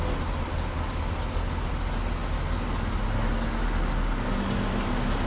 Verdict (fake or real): real